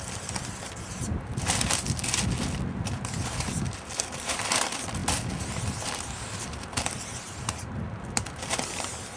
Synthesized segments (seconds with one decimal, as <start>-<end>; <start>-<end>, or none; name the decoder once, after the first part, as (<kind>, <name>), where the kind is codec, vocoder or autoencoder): 0.0-9.2 (vocoder, BigVGAN v2)